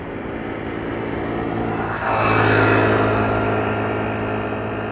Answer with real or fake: real